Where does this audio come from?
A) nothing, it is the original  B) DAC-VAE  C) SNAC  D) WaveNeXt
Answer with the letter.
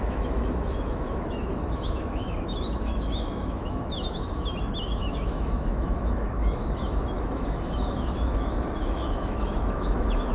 B